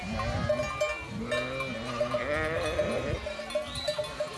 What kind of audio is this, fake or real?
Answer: real